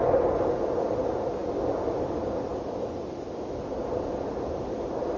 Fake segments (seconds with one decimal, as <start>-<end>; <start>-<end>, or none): none